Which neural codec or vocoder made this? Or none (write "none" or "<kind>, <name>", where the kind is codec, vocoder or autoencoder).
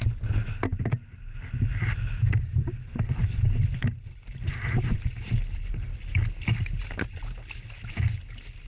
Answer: none